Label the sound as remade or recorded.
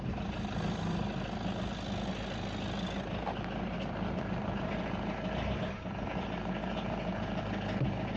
recorded